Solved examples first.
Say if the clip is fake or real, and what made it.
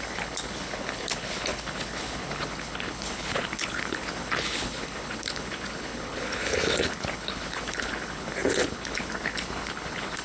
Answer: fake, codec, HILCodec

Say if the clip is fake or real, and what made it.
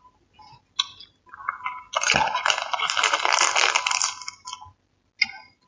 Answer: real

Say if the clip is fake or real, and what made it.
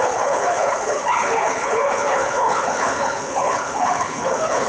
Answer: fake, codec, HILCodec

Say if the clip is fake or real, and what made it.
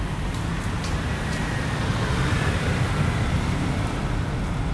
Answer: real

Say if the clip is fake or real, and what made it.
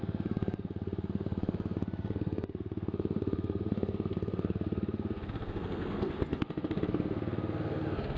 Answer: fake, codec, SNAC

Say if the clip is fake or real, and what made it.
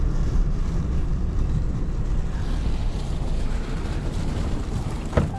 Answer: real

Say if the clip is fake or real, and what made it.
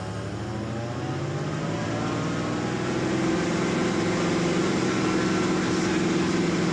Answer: real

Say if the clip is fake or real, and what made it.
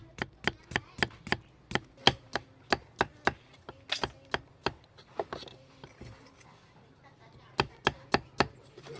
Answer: real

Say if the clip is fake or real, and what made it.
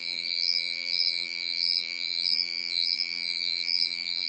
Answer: fake, vocoder, BigVGAN v2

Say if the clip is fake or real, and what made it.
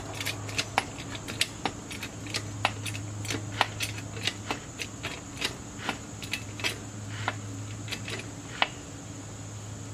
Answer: real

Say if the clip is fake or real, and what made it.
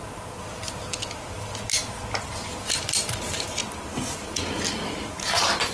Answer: real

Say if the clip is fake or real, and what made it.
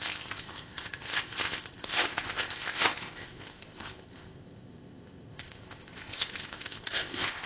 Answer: fake, codec, ZipCodec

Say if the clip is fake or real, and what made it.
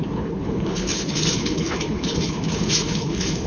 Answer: fake, codec, HILCodec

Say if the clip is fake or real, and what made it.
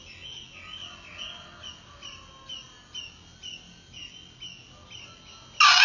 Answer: real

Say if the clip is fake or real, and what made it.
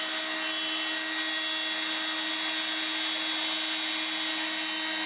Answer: real